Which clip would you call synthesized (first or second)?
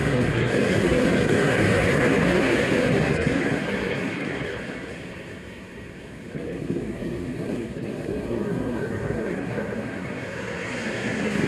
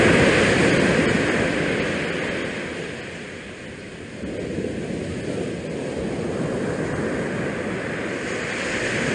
first